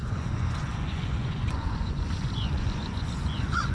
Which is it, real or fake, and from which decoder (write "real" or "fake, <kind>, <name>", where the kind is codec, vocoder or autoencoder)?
fake, vocoder, Vocos